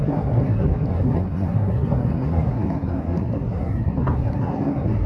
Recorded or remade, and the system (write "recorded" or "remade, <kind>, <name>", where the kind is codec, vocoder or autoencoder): remade, codec, SNAC